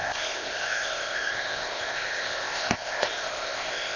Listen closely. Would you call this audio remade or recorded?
remade